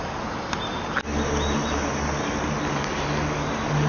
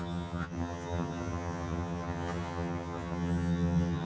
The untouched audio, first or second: first